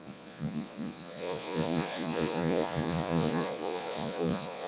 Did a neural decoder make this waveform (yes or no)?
yes